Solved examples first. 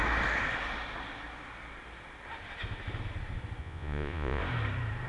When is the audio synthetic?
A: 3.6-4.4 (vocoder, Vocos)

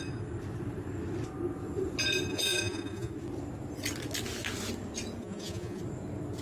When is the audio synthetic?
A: 2.3-3.1 (vocoder, Vocos); 5.2-5.8

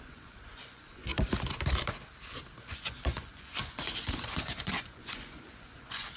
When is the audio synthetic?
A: 0.0-1.1 (vocoder, Vocos); 2.6-6.2